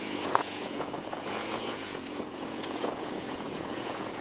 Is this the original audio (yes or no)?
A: no